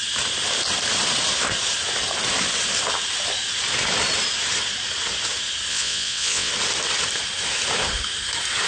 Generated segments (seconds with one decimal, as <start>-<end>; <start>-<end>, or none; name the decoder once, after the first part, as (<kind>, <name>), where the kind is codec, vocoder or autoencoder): 5.7-6.5 (vocoder, WaveNeXt)